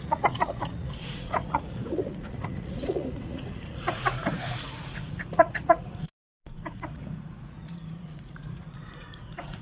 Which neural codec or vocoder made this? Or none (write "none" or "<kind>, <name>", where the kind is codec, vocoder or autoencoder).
vocoder, Vocos